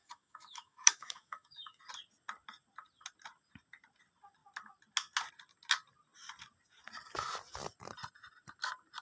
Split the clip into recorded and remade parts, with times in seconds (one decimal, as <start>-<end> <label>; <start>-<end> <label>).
0.0-1.8 remade; 1.8-9.0 recorded